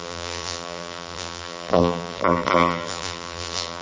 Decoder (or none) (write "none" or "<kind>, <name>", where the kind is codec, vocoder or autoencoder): vocoder, BigVGAN v2